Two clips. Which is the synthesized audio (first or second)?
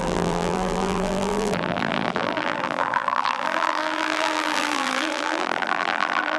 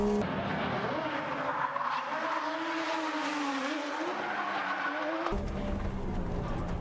first